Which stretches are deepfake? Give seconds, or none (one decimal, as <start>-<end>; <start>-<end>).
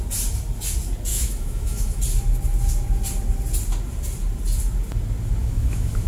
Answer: 1.1-2.0; 5.4-6.1